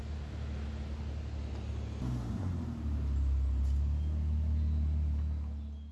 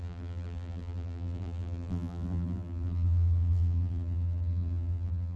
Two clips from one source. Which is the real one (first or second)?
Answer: first